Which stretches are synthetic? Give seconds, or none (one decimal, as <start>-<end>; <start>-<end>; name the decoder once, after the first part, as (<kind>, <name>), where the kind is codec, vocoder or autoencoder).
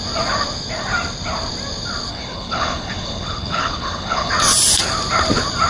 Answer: 2.1-4.3 (codec, HILCodec)